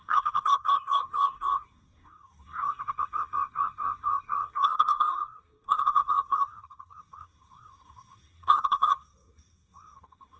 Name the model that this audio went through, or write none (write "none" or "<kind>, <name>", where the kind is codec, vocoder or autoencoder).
codec, SNAC